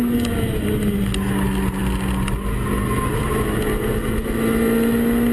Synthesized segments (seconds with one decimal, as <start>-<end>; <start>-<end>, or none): none